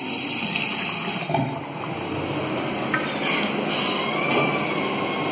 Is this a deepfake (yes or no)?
no